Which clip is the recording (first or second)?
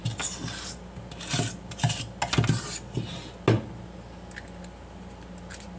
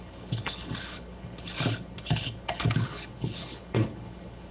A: first